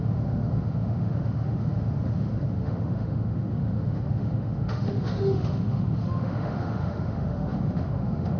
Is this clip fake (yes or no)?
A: yes